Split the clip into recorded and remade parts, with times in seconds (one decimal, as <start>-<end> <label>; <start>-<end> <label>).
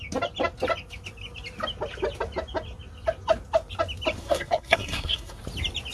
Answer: 0.0-4.2 recorded; 4.2-5.4 remade; 5.4-5.9 recorded